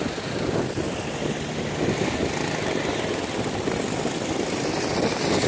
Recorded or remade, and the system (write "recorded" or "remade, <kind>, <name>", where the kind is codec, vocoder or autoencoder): recorded